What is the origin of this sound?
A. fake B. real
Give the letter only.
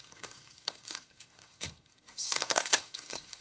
A